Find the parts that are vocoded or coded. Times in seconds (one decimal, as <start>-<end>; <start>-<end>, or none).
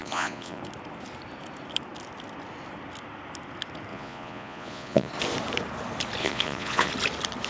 0.0-0.6; 3.9-5.1; 6.2-6.9